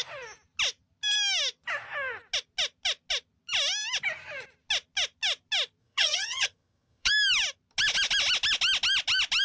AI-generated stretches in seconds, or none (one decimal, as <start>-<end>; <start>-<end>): 5.8-7.1